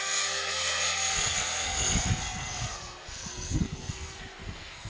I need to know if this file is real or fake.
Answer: fake